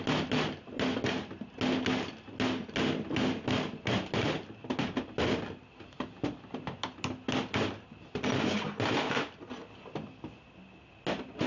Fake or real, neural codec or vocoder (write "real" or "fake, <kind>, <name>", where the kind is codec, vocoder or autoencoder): real